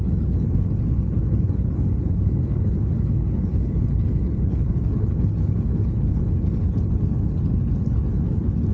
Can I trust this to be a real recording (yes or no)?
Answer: no